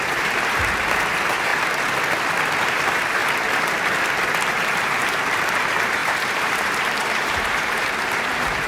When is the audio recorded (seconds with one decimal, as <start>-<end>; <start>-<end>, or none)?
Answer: 1.5-2.6; 3.2-4.5